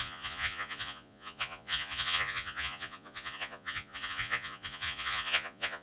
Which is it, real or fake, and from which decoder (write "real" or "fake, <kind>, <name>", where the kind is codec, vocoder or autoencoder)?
fake, vocoder, Vocos